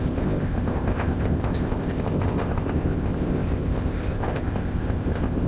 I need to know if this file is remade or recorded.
remade